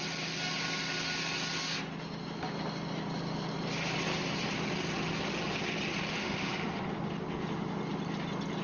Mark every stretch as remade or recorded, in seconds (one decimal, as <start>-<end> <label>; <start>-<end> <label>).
0.0-6.1 recorded; 6.1-6.8 remade; 6.8-8.6 recorded